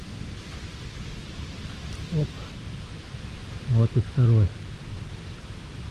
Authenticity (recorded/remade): recorded